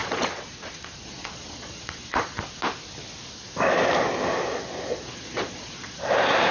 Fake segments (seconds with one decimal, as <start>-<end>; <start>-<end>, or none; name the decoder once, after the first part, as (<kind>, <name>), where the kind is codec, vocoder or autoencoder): 0.0-2.4 (vocoder, Vocos); 4.9-6.0